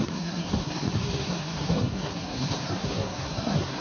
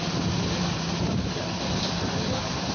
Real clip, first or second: second